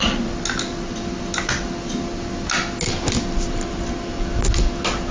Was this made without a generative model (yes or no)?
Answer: yes